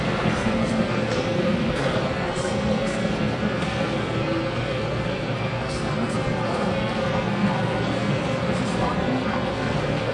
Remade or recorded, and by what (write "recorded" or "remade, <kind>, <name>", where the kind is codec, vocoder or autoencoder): remade, codec, SNAC